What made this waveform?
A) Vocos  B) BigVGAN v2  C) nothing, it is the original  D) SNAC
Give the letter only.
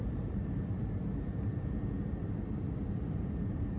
B